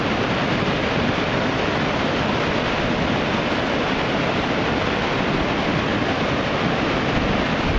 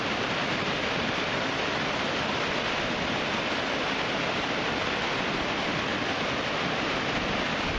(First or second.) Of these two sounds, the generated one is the second